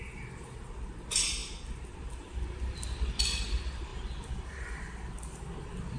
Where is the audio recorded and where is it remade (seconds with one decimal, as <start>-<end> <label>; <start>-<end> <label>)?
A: 0.0-6.0 recorded